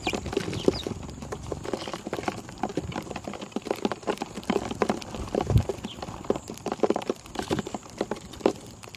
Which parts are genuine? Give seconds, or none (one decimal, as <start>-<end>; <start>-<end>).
2.7-4.1; 5.7-6.4